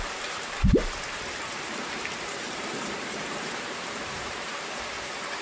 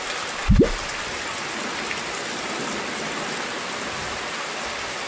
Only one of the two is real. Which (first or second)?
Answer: second